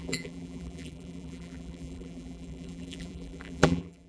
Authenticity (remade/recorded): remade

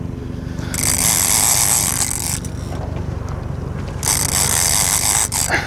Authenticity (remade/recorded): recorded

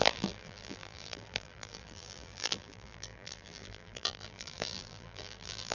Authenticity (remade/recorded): remade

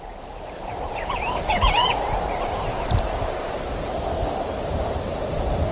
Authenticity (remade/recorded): remade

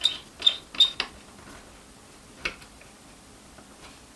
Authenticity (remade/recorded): recorded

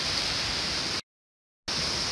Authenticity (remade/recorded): recorded